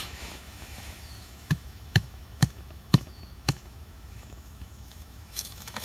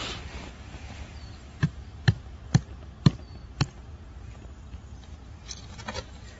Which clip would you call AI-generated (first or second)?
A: first